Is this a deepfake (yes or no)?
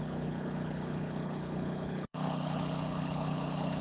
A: yes